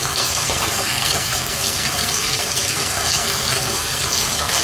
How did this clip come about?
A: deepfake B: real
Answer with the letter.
A